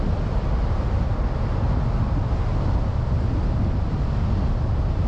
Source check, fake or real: real